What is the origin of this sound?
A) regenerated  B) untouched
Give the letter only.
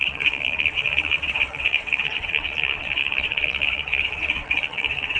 A